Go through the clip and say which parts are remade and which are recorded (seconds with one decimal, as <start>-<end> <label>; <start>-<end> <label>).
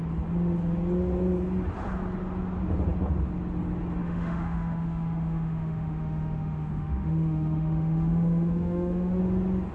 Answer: 0.0-4.0 recorded; 4.0-9.2 remade; 9.2-9.7 recorded